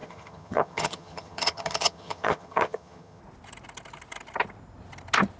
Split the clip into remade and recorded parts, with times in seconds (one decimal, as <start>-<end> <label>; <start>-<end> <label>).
0.0-3.2 remade; 3.2-5.4 recorded